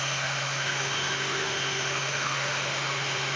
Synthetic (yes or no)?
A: yes